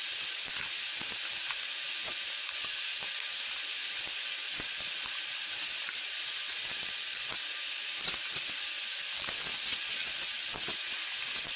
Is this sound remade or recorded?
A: recorded